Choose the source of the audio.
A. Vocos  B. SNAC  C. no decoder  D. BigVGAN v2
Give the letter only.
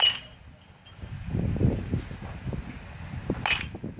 C